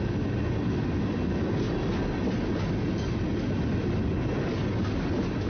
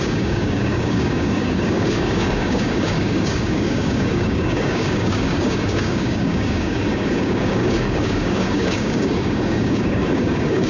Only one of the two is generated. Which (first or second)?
second